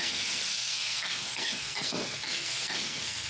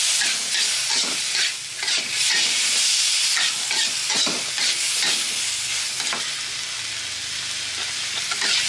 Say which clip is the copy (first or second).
first